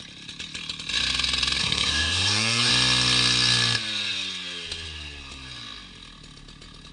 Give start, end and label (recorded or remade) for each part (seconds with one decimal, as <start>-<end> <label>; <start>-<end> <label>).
0.0-1.6 recorded; 1.6-2.7 remade; 2.7-6.9 recorded